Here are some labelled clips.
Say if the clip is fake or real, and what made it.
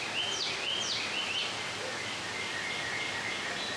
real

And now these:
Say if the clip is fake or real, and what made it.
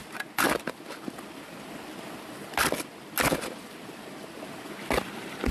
real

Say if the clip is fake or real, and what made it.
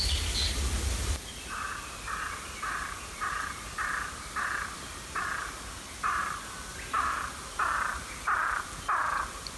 real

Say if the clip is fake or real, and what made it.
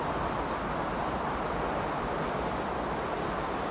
real